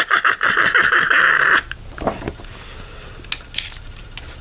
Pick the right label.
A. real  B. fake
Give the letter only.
A